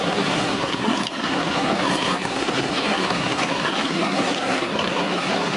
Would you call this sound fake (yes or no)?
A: yes